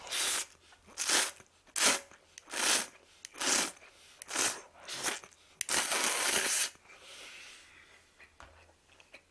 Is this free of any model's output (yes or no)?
yes